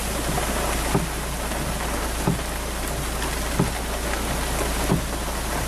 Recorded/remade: recorded